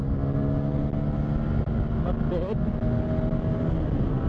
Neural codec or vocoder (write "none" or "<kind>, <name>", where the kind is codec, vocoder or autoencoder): none